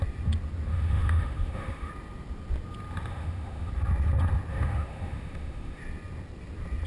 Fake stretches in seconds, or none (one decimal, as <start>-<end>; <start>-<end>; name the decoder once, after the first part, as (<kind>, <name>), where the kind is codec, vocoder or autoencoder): 0.7-1.9 (autoencoder, DAC-VAE); 3.1-3.7; 4.5-5.8